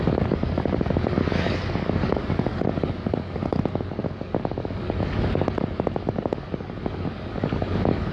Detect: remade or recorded remade